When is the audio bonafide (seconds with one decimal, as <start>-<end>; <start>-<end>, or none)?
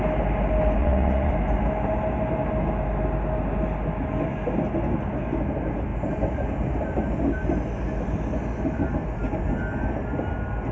0.0-0.8; 1.3-10.7